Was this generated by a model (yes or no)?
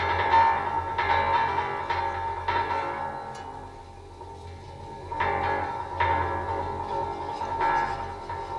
no